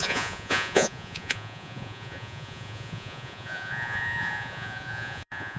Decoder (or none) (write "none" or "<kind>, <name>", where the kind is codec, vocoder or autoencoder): vocoder, Vocos